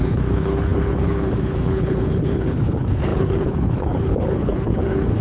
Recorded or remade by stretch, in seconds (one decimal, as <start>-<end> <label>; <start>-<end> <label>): 0.0-5.2 remade